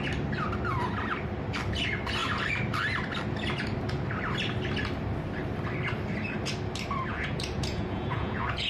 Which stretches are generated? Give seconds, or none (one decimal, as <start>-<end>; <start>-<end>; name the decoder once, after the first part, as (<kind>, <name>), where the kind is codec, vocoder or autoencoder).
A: 7.1-8.7 (vocoder, Vocos)